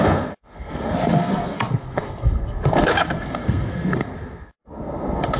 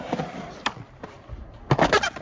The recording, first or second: second